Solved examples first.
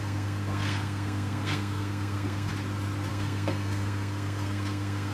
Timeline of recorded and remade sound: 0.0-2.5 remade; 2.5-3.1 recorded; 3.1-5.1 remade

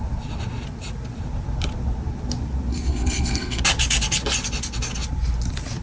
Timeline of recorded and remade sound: 0.0-2.7 recorded; 2.7-3.6 remade; 3.6-5.8 recorded

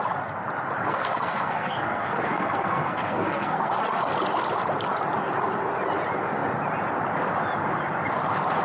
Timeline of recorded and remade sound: 0.0-0.8 recorded; 0.8-3.8 remade; 3.8-8.6 recorded

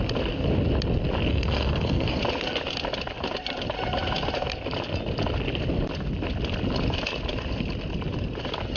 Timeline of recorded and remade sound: 0.0-1.3 recorded; 1.3-2.2 remade; 2.2-8.8 recorded

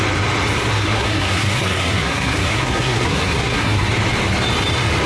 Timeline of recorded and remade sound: 0.0-0.8 recorded; 0.8-3.9 remade; 3.9-5.1 recorded

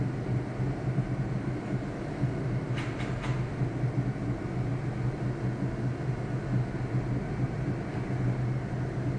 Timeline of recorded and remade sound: 0.0-9.2 recorded

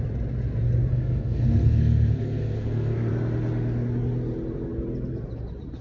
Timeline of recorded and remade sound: 0.0-0.9 recorded; 0.9-3.1 remade; 3.1-5.8 recorded

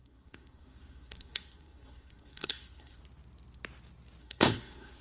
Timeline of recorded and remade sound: 0.0-3.0 remade; 3.0-4.2 recorded; 4.2-5.0 remade